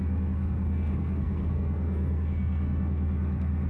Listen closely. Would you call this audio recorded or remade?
remade